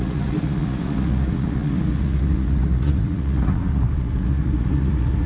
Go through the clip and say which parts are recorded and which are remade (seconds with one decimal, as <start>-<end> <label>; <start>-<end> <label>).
0.0-5.3 remade